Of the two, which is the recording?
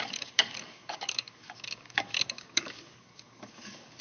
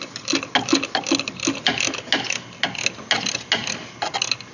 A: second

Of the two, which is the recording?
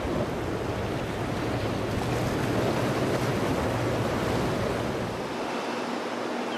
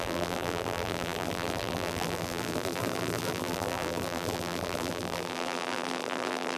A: first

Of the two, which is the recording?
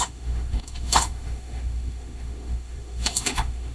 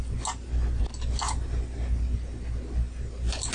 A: second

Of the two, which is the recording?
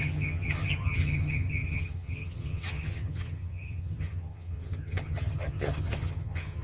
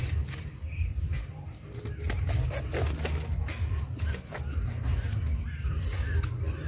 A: second